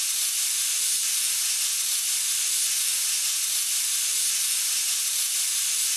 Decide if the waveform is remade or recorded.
recorded